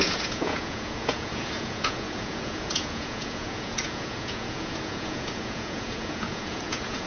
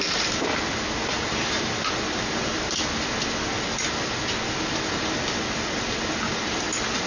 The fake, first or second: first